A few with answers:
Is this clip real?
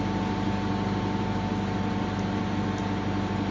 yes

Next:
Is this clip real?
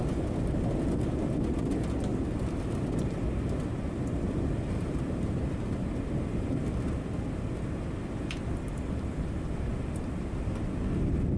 yes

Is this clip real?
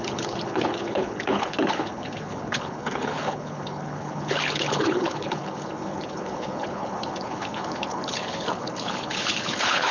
no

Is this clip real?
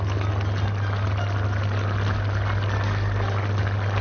yes